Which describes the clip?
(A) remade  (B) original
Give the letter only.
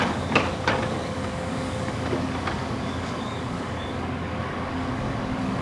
A